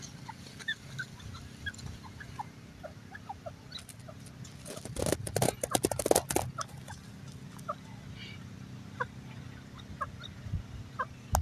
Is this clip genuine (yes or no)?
yes